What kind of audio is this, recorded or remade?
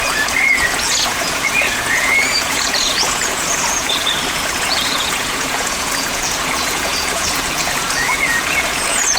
remade